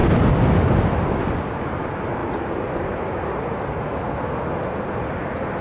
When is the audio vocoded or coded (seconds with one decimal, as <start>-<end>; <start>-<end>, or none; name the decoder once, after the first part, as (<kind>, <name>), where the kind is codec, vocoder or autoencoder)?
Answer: 1.6-2.2 (vocoder, BigVGAN v2)